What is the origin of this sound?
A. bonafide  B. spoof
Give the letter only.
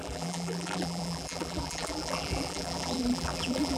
B